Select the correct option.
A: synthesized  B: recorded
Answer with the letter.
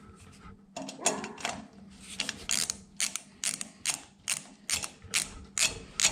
B